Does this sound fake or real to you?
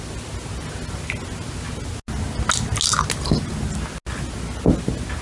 real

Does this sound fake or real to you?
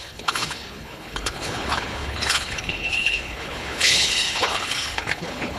fake